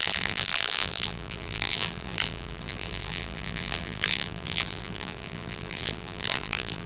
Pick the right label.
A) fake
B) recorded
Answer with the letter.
A